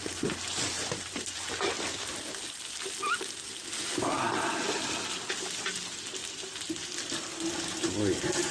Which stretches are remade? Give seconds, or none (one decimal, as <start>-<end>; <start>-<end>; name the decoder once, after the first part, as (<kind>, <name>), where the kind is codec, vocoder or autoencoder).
none